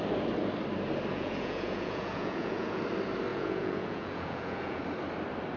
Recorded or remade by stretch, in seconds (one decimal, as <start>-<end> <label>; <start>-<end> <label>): 0.0-1.1 recorded; 1.1-2.8 remade; 2.8-3.3 recorded; 3.3-4.8 remade; 4.8-5.6 recorded